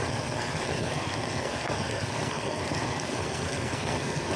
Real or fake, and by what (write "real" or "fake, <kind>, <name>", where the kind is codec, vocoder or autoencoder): fake, codec, SNAC